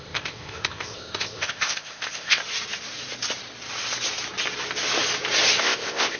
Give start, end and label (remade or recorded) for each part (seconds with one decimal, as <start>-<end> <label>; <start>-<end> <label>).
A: 0.0-2.4 remade; 2.4-5.6 recorded; 5.6-6.2 remade